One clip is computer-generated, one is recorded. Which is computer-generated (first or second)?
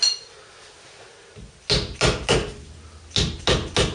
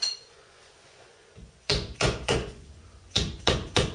second